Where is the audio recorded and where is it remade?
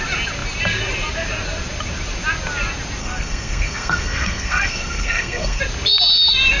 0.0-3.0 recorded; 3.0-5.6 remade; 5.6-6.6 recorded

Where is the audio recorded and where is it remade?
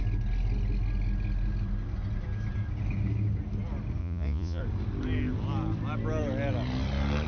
0.0-4.0 recorded; 4.0-4.6 remade; 4.6-7.3 recorded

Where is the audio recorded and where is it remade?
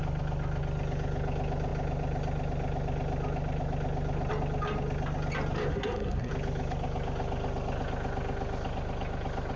0.0-5.7 recorded; 5.7-6.3 remade; 6.3-9.6 recorded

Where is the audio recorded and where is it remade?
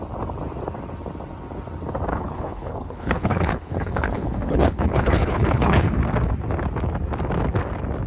0.0-2.1 recorded; 2.1-6.0 remade; 6.0-8.1 recorded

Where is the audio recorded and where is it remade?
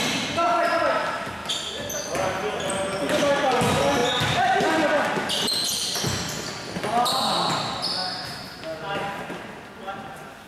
0.0-10.5 recorded